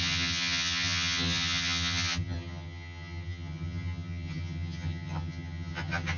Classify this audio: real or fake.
fake